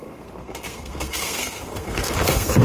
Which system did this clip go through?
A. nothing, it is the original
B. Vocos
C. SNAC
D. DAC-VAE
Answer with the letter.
C